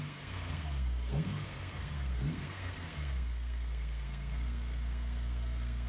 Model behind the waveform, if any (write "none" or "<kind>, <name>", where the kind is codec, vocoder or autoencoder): codec, SNAC